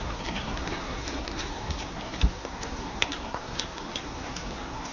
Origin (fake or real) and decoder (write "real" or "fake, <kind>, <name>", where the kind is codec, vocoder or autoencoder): fake, codec, SNAC